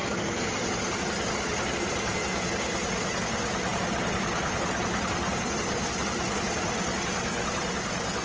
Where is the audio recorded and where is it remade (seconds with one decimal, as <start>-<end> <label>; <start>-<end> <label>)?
0.0-8.2 recorded